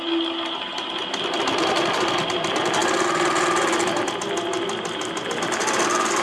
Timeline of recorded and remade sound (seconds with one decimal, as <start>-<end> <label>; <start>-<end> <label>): 0.0-6.2 recorded